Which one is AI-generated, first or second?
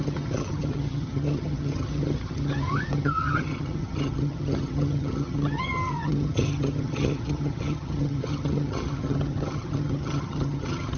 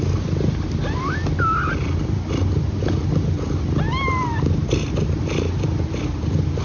first